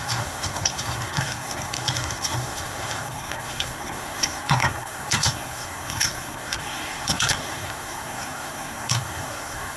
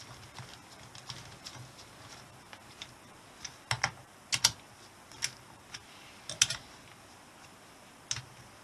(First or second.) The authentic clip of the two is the second